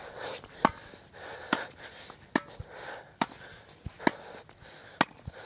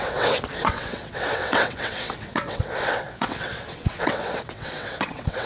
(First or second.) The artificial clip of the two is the second